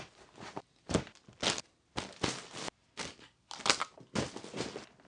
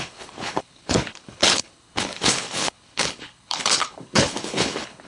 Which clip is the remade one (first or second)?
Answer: second